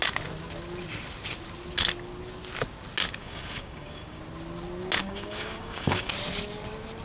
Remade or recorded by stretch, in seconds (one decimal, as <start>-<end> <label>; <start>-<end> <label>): 0.0-3.2 recorded; 3.2-4.2 remade; 4.2-5.0 recorded; 5.0-6.1 remade; 6.1-7.0 recorded